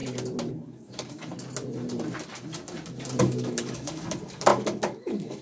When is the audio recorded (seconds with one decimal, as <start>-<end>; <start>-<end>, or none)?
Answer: 0.0-0.5; 1.3-3.2